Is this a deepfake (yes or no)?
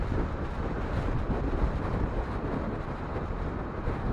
no